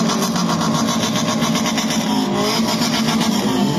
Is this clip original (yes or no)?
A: yes